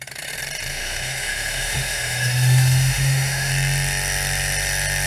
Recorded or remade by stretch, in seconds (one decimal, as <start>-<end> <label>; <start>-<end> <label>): 0.0-0.7 recorded; 0.7-3.5 remade; 3.5-5.1 recorded